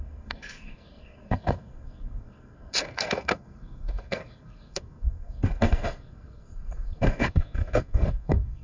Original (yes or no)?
no